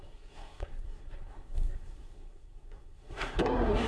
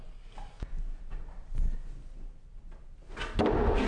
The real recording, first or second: second